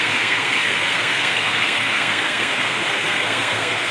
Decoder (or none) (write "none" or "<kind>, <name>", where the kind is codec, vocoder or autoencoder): codec, SNAC